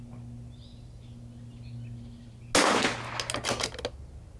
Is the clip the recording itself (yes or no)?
yes